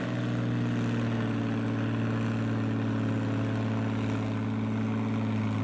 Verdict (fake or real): real